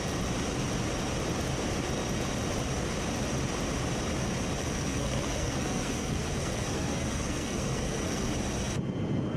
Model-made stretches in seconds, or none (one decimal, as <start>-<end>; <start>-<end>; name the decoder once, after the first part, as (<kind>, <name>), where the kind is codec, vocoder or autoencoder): 4.6-8.3 (codec, SNAC)